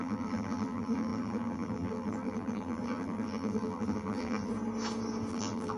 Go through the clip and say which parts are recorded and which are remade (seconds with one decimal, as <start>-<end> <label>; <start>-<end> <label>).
0.0-4.5 remade; 4.5-5.3 recorded; 5.3-5.8 remade